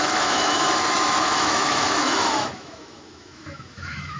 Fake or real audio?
fake